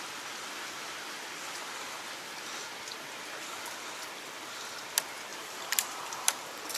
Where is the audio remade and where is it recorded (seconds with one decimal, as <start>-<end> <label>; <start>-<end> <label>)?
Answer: 0.0-5.3 recorded; 5.3-6.8 remade